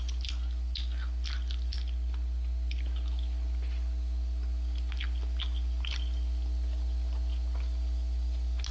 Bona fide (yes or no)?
yes